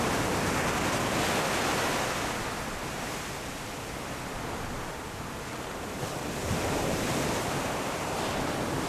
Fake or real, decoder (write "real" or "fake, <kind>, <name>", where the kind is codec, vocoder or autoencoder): real